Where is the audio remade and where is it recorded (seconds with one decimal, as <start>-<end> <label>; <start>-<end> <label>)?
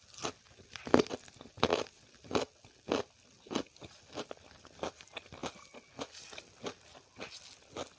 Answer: 0.0-8.0 recorded